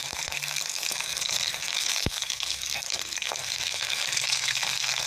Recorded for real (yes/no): no